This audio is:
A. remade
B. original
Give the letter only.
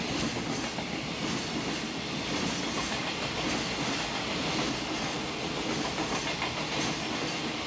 B